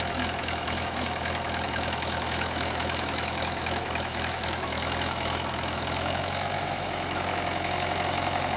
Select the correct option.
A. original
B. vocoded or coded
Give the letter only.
B